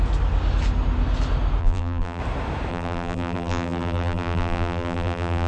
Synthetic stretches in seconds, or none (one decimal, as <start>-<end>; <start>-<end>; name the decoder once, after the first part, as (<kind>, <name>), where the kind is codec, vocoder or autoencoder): 1.6-2.2 (vocoder, BigVGAN v2); 2.7-5.5